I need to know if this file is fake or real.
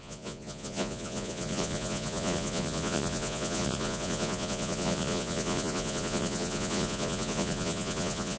fake